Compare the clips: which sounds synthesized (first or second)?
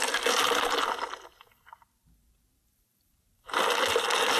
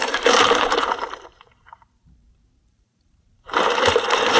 second